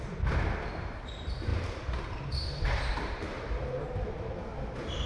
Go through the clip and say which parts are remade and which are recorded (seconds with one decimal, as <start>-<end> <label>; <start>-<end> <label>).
0.0-4.5 remade; 4.5-5.1 recorded